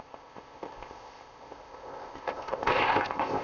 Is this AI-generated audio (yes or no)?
yes